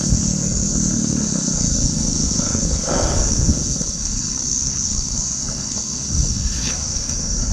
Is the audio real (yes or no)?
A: no